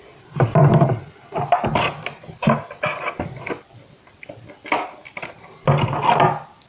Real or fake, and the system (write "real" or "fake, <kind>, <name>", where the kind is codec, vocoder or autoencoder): real